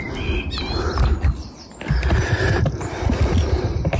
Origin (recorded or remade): recorded